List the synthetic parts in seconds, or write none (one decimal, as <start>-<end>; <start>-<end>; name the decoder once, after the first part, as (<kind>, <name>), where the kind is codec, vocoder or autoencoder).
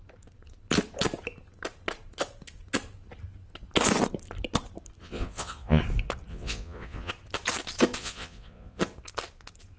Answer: 5.0-5.8 (vocoder, Vocos); 6.3-7.1; 8.0-8.8